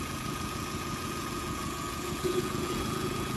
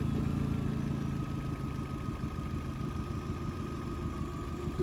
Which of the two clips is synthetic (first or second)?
first